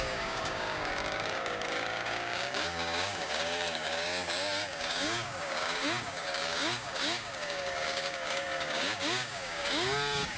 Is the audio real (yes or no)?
no